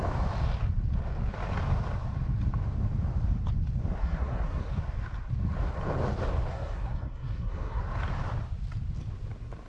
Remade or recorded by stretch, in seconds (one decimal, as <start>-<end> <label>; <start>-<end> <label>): 0.0-4.0 recorded; 4.0-4.7 remade; 4.7-6.5 recorded; 6.5-7.8 remade; 7.8-9.7 recorded